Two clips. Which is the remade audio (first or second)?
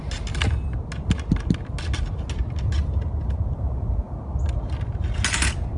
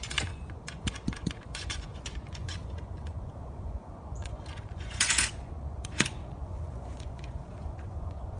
second